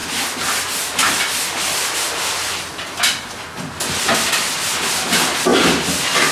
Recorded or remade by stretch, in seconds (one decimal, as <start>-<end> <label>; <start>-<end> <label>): 0.0-6.3 recorded